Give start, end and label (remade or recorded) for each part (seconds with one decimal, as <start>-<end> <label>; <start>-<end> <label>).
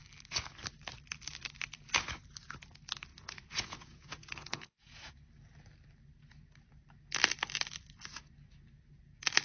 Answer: 0.0-3.1 recorded; 3.1-5.1 remade; 5.1-9.4 recorded